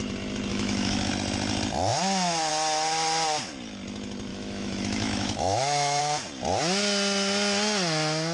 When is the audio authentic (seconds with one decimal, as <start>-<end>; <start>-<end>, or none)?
0.0-0.5; 1.1-4.3; 6.0-8.3